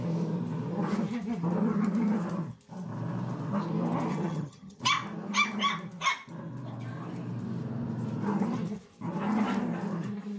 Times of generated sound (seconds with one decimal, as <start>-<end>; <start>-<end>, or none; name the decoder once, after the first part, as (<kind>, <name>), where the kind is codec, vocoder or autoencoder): 4.1-4.8 (vocoder, HiFi-GAN)